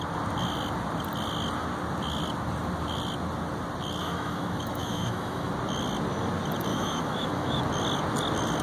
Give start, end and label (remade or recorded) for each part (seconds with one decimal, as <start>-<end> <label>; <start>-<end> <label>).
0.0-4.0 recorded; 4.0-5.5 remade; 5.5-6.7 recorded; 6.7-7.6 remade; 7.6-8.6 recorded